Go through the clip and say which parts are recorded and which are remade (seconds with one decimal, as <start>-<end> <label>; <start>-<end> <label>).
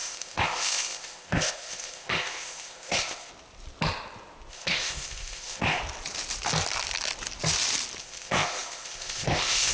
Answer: 0.0-3.3 remade; 3.3-4.5 recorded; 4.5-5.8 remade; 5.8-8.0 recorded; 8.0-9.7 remade